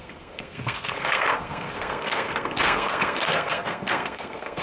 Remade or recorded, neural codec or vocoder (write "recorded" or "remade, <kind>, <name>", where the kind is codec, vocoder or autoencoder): remade, codec, SNAC